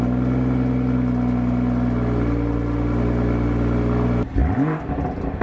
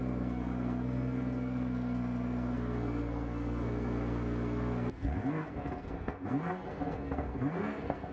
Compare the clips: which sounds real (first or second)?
first